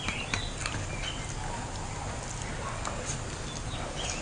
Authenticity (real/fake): real